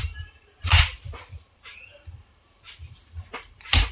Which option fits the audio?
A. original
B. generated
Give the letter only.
B